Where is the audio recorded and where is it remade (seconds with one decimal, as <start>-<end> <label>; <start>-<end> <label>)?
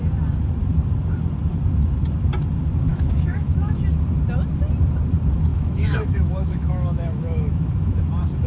0.0-2.9 recorded; 2.9-3.8 remade; 3.8-5.5 recorded; 5.5-8.0 remade; 8.0-8.5 recorded